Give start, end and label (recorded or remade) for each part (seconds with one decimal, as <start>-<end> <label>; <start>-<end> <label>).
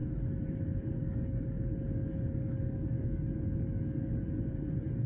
0.0-1.0 recorded; 1.0-4.1 remade; 4.1-5.1 recorded